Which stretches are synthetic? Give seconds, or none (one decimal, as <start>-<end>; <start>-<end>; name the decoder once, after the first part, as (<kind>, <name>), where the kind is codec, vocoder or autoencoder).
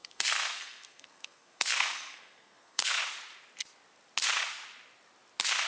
0.0-3.0 (codec, SNAC)